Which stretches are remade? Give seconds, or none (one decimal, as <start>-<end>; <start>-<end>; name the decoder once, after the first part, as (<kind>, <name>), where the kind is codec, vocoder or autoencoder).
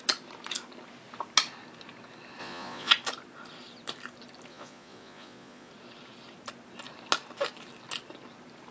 2.4-2.9 (vocoder, Vocos); 4.5-5.7